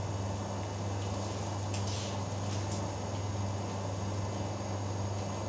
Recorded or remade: recorded